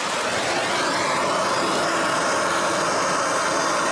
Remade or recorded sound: recorded